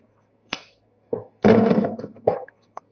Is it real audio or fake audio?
fake